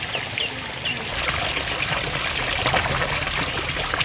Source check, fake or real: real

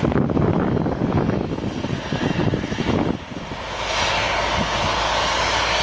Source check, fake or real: real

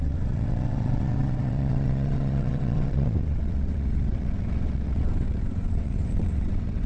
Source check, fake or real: fake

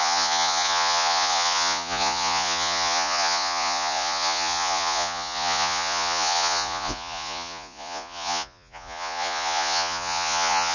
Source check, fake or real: fake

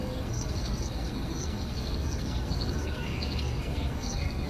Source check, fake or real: fake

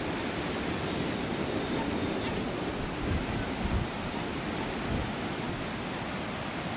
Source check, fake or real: real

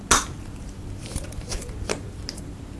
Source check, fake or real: real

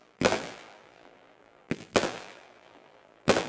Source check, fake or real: fake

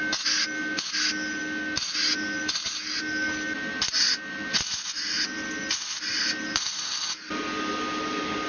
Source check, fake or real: real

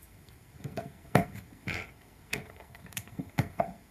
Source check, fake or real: fake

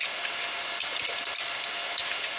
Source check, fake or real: real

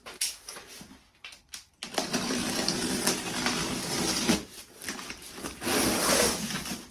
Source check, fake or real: real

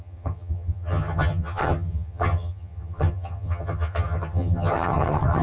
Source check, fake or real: fake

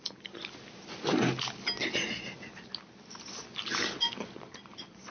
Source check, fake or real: real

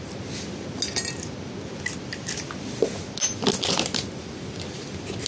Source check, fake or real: real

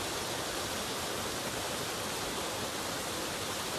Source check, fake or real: real